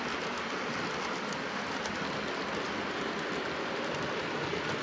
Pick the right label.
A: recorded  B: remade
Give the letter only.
A